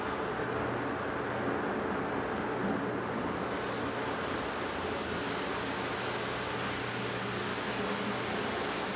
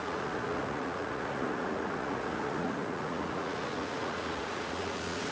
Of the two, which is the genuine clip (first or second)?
first